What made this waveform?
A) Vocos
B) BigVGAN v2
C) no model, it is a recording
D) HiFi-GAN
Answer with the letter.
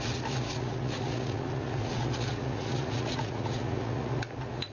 A